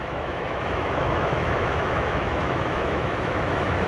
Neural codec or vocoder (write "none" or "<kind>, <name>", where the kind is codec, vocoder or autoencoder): autoencoder, DAC-VAE